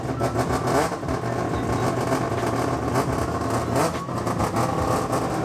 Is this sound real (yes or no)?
yes